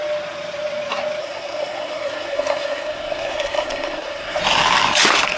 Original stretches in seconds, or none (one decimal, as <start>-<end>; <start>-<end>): 0.0-1.2; 4.4-5.4